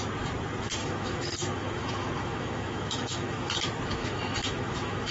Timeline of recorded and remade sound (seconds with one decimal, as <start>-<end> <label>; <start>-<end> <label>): 0.0-0.8 recorded; 0.8-3.5 remade; 3.5-4.0 recorded; 4.0-5.1 remade